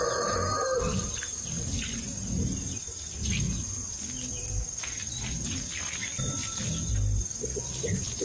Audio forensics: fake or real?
real